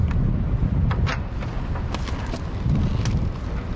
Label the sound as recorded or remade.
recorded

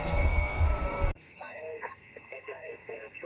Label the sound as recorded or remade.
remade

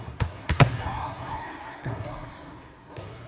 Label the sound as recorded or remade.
remade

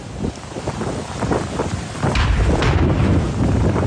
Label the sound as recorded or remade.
recorded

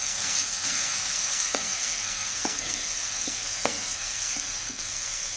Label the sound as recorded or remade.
remade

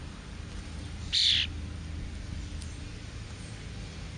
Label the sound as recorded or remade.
recorded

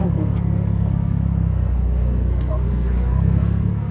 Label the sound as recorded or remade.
remade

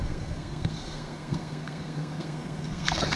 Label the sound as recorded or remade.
remade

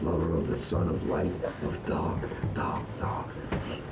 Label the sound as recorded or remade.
recorded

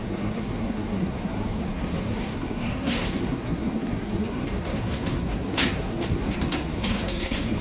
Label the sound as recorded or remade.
remade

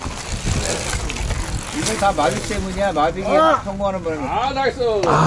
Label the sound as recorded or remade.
recorded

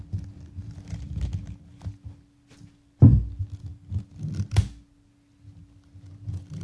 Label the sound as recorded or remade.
recorded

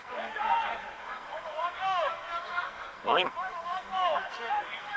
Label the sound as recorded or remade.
remade